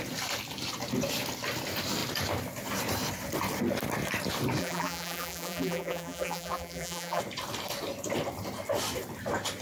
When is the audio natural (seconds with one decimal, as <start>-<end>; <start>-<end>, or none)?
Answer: 0.0-4.6; 7.2-9.6